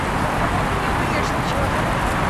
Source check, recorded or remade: recorded